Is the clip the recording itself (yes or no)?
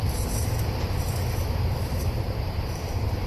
no